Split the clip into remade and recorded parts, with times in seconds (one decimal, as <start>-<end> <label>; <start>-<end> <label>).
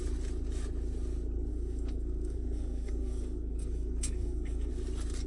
0.0-1.5 recorded; 1.5-4.7 remade; 4.7-5.3 recorded